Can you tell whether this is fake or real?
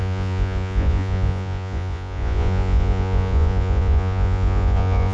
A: fake